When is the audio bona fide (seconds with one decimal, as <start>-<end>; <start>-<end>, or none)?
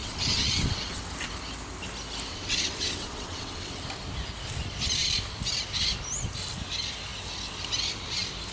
1.0-2.3; 3.8-8.5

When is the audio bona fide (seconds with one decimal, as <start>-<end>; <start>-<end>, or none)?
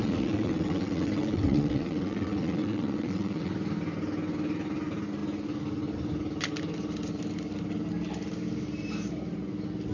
3.5-9.9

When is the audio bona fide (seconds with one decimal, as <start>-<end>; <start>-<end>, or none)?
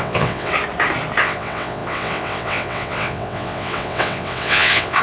0.5-1.2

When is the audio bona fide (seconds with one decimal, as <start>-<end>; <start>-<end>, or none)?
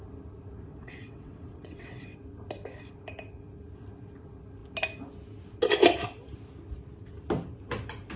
0.0-0.7; 2.2-8.2